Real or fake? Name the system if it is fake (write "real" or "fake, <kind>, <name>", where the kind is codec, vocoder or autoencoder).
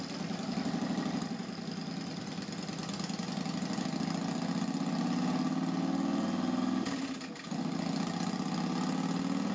real